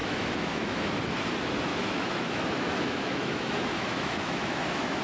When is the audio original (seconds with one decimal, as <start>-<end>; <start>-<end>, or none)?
0.9-1.7

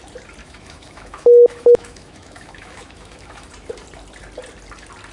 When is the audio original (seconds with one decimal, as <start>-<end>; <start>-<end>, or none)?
0.0-0.4; 3.5-5.1

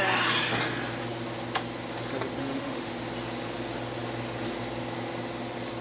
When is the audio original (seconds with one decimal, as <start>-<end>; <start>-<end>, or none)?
0.0-2.4; 2.9-5.8